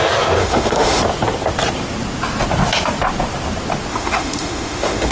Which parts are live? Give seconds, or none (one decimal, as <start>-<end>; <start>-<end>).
0.0-0.4; 1.0-3.9